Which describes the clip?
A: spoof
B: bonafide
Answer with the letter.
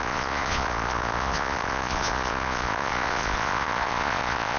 A